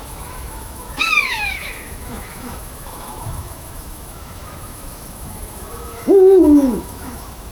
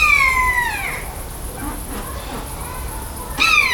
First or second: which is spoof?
first